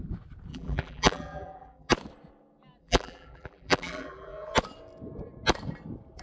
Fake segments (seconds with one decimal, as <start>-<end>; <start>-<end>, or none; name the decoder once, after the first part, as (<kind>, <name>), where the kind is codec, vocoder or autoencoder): 0.5-1.9 (vocoder, BigVGAN v2); 2.8-4.5